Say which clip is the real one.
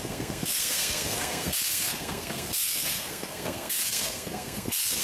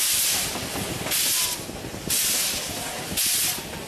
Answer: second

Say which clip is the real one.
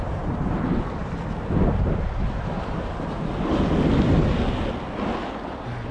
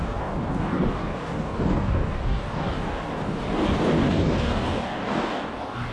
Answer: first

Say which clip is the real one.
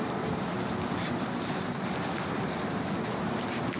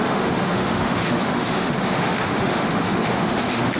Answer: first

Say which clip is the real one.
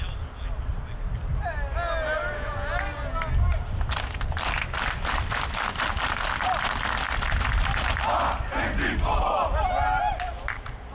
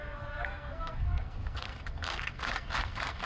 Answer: first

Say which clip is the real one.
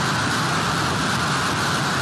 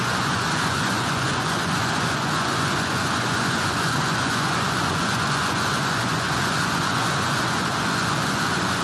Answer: first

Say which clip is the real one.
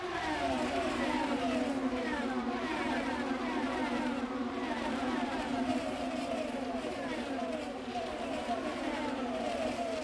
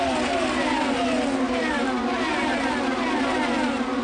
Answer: second